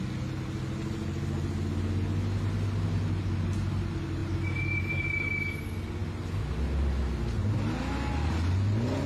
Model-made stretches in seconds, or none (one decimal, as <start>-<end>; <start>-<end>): none